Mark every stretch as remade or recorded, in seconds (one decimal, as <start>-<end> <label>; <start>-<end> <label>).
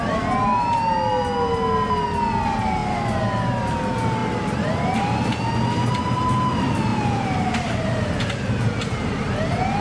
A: 0.0-6.9 recorded; 6.9-8.1 remade; 8.1-9.8 recorded